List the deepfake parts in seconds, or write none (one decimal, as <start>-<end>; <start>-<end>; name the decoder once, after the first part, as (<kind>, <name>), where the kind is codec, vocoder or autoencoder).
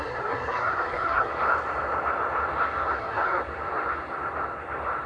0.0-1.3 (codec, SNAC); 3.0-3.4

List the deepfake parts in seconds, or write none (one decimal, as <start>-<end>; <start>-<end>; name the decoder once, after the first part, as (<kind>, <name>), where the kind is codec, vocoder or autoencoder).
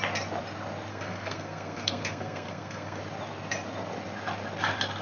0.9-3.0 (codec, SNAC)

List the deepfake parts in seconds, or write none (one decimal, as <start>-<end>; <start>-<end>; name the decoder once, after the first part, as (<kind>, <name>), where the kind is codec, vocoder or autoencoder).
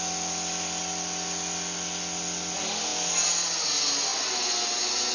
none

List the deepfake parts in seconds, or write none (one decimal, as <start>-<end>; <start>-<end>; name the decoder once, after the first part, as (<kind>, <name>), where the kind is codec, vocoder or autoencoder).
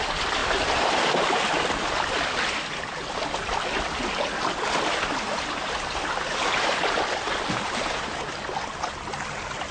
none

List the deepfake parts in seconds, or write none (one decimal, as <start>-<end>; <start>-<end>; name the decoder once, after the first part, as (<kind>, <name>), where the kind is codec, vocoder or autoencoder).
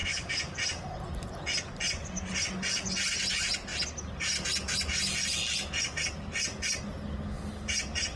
none